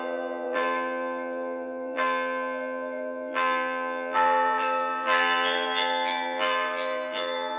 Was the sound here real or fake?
fake